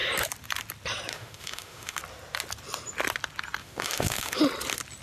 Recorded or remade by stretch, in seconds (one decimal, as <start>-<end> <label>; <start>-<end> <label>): 0.0-1.1 recorded; 1.1-2.0 remade; 2.0-3.6 recorded; 3.6-4.4 remade; 4.4-5.0 recorded